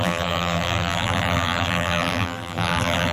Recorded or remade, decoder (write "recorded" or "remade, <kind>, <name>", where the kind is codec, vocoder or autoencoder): remade, vocoder, BigVGAN v2